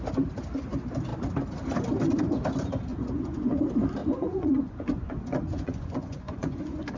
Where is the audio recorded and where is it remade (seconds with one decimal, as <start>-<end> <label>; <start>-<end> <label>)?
0.0-2.9 recorded; 2.9-3.6 remade; 3.6-4.0 recorded; 4.0-7.0 remade